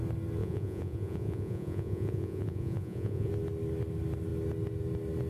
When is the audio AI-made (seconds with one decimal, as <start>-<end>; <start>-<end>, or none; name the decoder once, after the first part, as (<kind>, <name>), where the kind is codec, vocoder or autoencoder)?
0.4-3.3 (vocoder, Vocos)